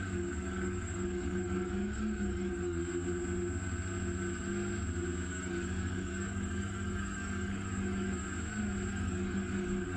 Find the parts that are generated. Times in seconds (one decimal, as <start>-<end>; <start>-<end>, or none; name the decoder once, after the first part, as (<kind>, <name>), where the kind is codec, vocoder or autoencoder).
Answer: 0.0-2.8 (codec, DAC); 5.3-8.2; 8.9-10.0